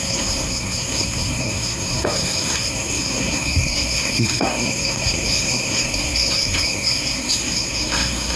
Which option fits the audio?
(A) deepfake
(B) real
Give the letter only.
A